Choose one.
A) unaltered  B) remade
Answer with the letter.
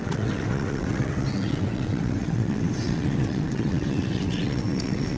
B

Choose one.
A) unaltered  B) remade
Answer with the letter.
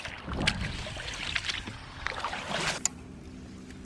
A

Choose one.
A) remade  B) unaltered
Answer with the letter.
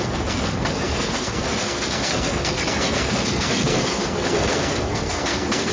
A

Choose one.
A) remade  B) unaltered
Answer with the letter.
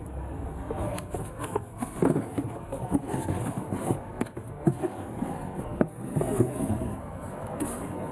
A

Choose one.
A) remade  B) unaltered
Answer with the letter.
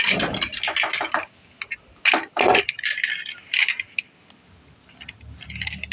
B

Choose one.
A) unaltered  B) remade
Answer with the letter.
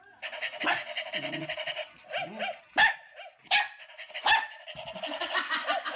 A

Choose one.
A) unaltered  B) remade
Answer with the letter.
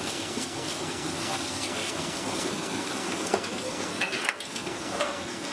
B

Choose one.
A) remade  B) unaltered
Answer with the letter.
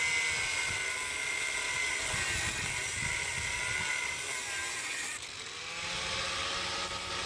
B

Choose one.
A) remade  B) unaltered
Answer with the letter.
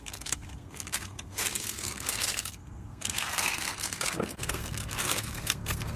A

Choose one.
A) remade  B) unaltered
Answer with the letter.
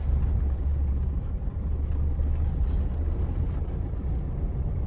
B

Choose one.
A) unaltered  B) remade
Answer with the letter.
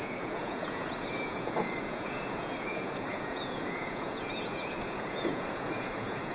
B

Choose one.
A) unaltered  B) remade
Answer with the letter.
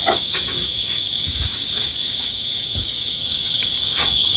B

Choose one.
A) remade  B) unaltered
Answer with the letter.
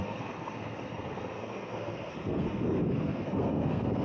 A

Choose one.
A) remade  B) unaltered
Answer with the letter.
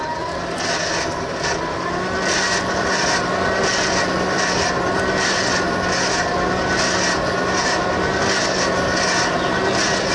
B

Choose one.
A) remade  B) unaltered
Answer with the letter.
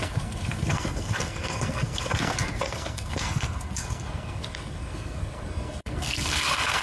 A